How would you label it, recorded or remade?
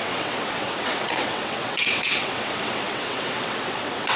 remade